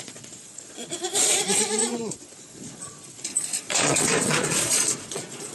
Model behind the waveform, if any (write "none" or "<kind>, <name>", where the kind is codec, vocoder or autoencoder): vocoder, Vocos